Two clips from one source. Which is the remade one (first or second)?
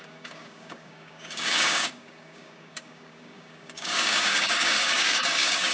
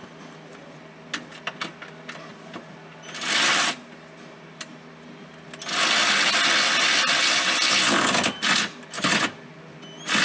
first